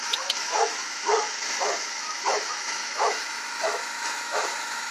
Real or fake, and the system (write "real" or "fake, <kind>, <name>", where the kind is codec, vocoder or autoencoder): fake, autoencoder, DAC-VAE